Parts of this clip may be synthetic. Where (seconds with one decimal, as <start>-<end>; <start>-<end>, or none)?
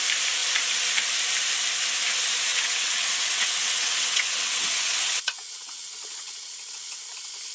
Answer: 2.5-7.0